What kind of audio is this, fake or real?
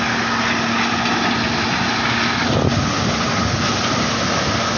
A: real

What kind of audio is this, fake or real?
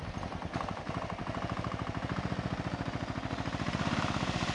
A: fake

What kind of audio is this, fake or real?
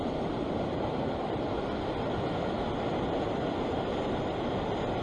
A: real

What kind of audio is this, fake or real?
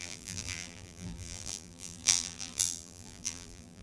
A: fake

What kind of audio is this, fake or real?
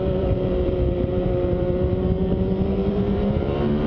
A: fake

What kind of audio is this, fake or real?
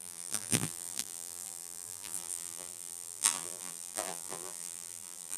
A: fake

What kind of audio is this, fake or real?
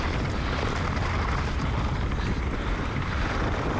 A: fake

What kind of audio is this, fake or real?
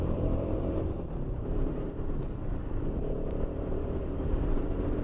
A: fake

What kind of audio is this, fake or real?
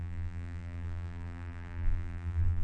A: fake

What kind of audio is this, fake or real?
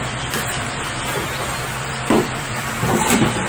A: fake